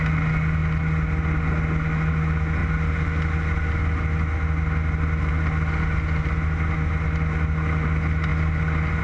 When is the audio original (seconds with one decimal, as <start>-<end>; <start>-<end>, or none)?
0.0-9.0